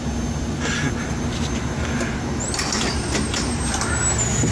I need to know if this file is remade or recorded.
recorded